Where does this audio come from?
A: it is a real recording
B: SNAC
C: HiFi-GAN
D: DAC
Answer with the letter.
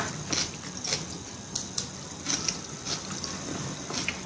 A